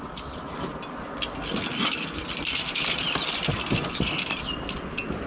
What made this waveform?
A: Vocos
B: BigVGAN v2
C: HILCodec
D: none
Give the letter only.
D